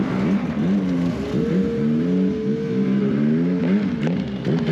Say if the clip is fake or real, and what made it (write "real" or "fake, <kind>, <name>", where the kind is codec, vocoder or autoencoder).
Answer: real